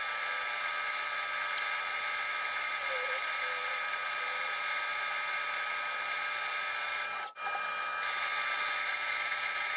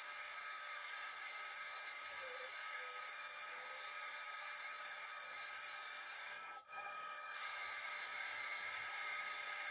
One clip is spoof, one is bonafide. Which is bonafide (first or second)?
first